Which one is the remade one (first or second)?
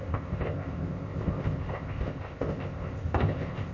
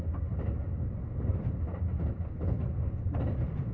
first